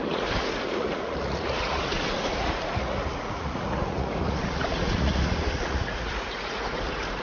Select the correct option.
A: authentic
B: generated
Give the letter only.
B